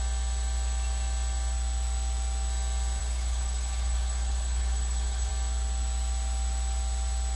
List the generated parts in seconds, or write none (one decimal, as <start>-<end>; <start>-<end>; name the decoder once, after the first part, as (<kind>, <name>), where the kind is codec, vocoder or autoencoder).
3.0-5.3 (codec, HILCodec)